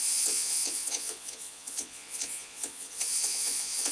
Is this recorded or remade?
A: remade